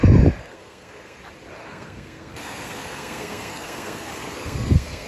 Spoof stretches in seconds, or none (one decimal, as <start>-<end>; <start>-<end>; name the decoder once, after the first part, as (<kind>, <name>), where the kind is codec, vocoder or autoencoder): 0.4-1.2 (codec, SNAC); 1.6-5.1